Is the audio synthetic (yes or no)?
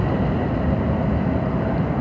no